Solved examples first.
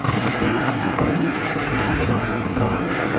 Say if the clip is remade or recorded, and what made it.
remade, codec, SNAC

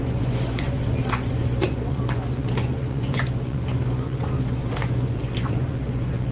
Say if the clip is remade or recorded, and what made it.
remade, vocoder, Vocos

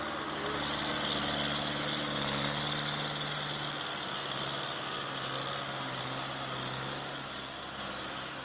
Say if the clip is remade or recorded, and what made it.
recorded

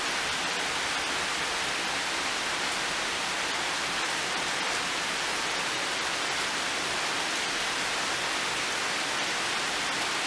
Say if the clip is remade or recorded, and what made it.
recorded